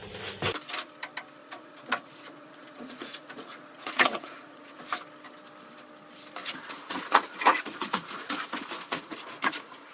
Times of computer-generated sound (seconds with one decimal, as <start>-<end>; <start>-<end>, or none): 1.4-4.8; 6.4-9.9